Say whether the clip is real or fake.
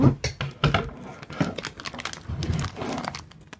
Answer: real